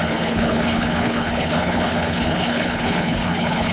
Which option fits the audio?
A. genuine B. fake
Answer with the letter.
B